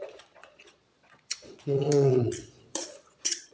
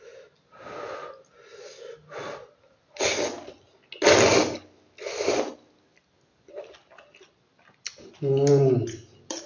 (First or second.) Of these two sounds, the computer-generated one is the first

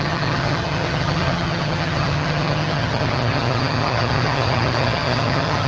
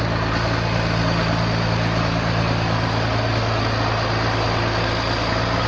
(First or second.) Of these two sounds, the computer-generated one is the first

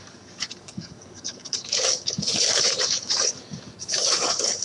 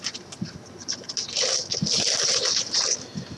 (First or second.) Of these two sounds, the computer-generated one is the first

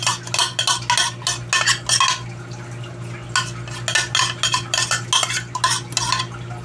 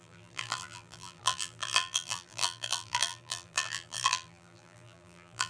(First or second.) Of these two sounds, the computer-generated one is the second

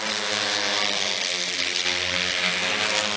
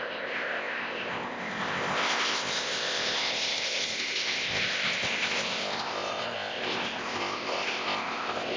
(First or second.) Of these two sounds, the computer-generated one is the second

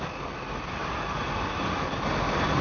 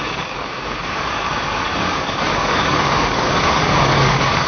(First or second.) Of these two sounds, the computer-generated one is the second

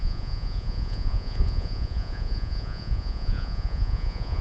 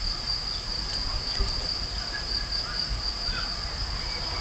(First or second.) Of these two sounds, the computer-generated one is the first